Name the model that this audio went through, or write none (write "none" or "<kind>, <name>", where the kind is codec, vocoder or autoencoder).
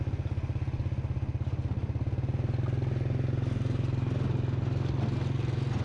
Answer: none